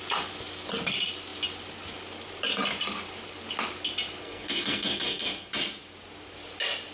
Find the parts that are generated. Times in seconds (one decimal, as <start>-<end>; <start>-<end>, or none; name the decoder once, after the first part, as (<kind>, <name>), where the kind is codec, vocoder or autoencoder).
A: 4.2-5.5 (codec, SNAC)